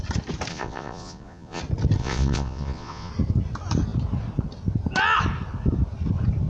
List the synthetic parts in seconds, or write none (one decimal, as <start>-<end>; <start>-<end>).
0.5-1.6; 2.0-3.1